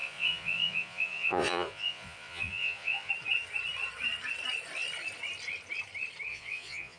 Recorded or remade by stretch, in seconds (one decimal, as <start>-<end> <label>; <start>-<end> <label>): 0.0-3.1 remade; 3.1-6.3 recorded; 6.3-7.0 remade